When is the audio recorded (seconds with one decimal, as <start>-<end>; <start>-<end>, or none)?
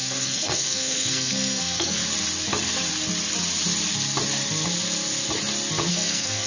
2.0-5.9